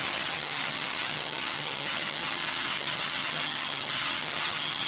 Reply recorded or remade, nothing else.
remade